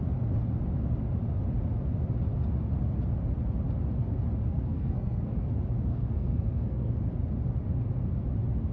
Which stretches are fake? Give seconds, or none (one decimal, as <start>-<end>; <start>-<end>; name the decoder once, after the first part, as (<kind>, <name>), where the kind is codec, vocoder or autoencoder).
4.5-5.5 (codec, SNAC); 5.9-6.9